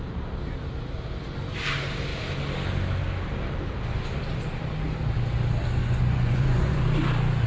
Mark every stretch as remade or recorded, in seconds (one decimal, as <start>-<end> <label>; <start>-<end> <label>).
0.0-5.8 recorded; 5.8-6.8 remade; 6.8-7.5 recorded